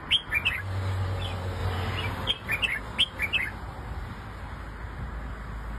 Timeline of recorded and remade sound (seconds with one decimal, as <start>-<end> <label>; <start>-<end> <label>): 0.0-5.8 recorded